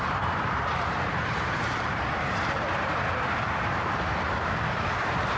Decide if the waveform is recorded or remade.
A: remade